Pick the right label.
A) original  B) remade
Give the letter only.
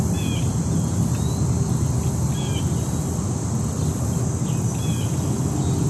A